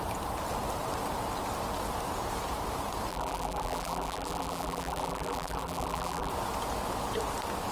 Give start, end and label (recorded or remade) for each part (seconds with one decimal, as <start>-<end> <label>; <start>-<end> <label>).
0.0-3.1 recorded; 3.1-6.3 remade; 6.3-7.7 recorded